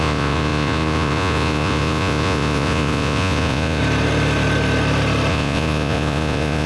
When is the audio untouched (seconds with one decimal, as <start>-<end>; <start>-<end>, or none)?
3.8-5.3